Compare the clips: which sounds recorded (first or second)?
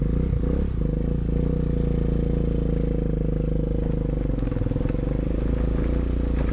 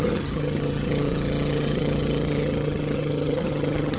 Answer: first